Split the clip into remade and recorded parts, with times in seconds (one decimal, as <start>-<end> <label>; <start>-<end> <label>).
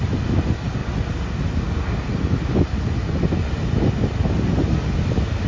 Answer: 0.0-5.5 recorded